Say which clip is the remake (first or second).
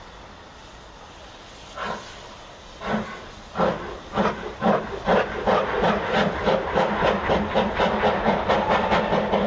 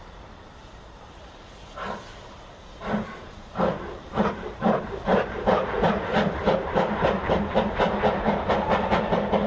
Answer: second